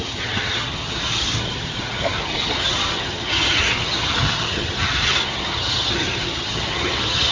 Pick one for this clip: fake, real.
fake